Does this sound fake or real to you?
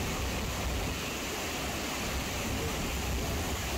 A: real